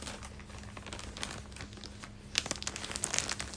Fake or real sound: real